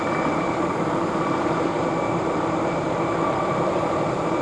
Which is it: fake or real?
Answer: fake